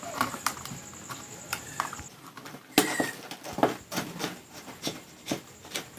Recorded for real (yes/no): yes